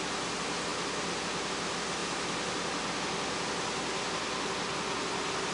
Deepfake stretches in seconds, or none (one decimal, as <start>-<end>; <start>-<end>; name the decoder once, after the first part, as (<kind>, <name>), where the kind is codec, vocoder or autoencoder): none